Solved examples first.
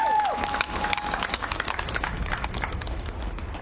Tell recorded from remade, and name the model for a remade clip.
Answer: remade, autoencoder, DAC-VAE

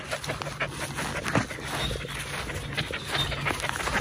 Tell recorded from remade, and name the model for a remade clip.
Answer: recorded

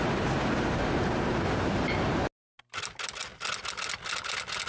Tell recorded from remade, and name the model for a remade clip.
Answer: recorded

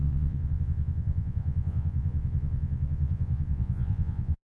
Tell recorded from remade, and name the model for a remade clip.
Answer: remade, vocoder, Vocos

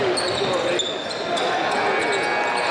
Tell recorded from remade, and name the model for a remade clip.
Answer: recorded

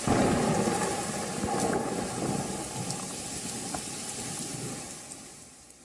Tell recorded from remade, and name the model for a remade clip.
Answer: recorded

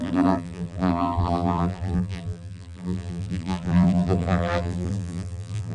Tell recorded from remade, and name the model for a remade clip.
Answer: remade, vocoder, BigVGAN v2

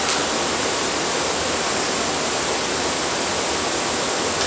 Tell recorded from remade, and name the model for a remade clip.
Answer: remade, vocoder, BigVGAN v2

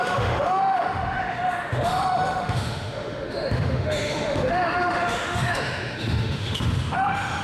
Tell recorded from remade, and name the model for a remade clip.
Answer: remade, autoencoder, DAC-VAE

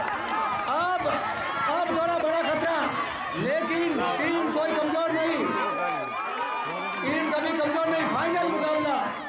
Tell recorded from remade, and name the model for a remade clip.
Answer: recorded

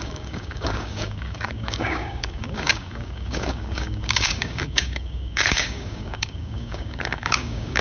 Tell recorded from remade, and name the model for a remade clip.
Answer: remade, codec, DAC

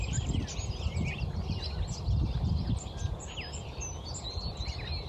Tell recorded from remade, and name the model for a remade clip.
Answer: recorded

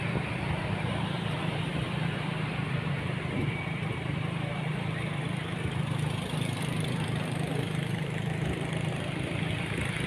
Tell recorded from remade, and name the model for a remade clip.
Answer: remade, vocoder, BigVGAN v2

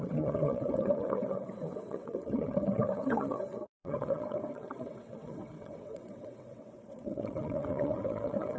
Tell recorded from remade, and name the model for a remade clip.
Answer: remade, vocoder, WaveNeXt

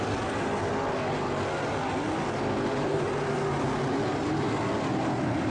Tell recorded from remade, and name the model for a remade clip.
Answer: recorded